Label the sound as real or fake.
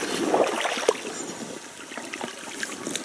real